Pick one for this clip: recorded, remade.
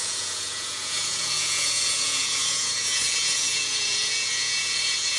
remade